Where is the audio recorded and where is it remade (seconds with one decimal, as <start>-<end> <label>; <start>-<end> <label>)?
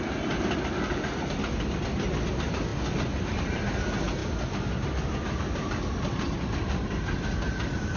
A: 0.0-8.0 recorded